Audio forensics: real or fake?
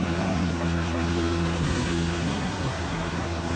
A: fake